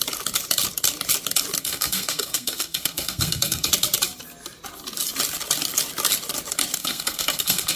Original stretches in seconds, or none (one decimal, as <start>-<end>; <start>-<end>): 0.0-1.6; 3.7-6.8